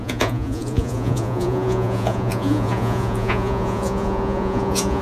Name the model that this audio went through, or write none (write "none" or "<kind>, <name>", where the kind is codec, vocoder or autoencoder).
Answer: vocoder, Vocos